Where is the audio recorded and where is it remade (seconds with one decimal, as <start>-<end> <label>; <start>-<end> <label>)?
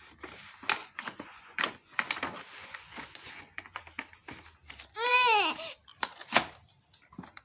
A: 0.0-0.8 recorded; 0.8-2.1 remade; 2.1-2.6 recorded; 2.6-3.8 remade; 3.8-7.4 recorded